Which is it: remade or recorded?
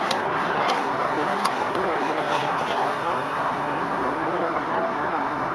remade